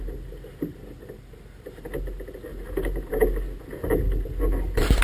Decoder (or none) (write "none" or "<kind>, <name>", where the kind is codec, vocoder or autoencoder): none